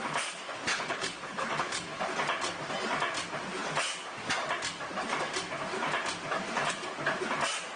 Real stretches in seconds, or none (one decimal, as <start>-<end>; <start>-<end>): 0.0-0.7; 2.0-7.8